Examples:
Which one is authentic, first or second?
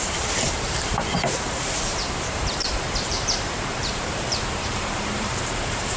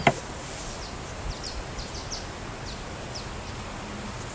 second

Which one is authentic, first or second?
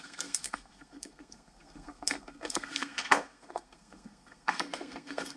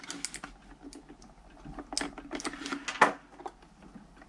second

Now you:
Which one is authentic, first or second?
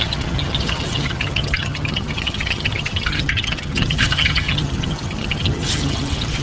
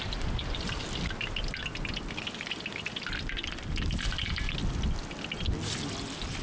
second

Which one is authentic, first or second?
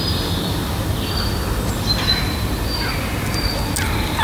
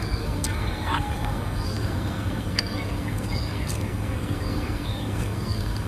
first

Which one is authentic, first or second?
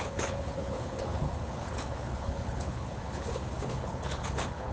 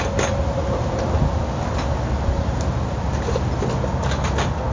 second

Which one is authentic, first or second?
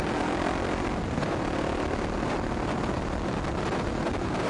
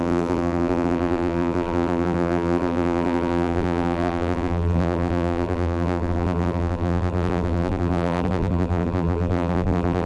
first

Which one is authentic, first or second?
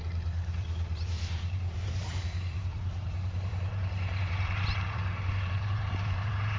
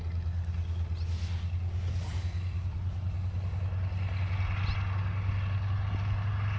second